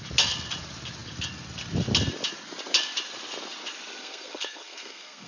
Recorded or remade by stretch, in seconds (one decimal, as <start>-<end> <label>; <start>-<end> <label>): 0.0-4.0 recorded; 4.0-5.3 remade